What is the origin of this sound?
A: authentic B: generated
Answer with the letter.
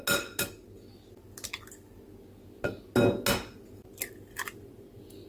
A